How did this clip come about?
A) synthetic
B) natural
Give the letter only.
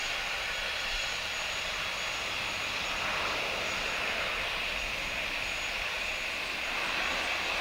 B